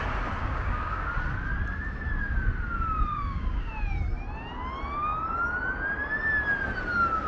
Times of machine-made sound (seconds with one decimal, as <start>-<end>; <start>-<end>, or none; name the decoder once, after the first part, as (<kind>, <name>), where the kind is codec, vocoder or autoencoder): 0.4-1.1 (codec, DAC); 3.1-3.7